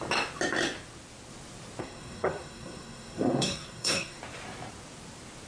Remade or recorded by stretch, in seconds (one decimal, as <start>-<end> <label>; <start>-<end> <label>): 0.0-1.8 recorded; 1.8-4.2 remade; 4.2-5.5 recorded